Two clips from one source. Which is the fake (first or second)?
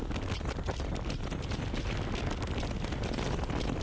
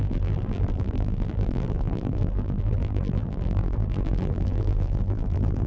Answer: second